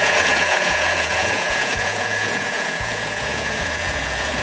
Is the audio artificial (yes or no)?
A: yes